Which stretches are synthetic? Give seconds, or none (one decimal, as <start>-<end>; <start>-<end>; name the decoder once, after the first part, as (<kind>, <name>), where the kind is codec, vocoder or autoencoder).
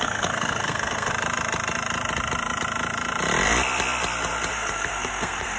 0.0-1.1 (codec, SNAC); 4.5-5.6